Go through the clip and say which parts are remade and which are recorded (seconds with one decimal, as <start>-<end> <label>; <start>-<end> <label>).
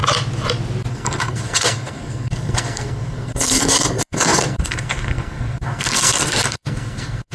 0.0-0.9 recorded; 0.9-7.3 remade